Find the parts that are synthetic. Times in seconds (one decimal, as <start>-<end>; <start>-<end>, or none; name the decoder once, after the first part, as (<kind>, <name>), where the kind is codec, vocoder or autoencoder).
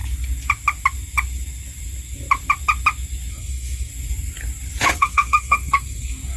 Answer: 3.3-3.9 (codec, SNAC); 4.9-6.4